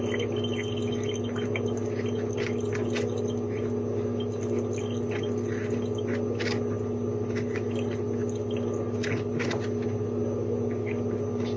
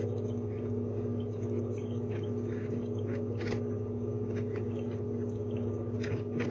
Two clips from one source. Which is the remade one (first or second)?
second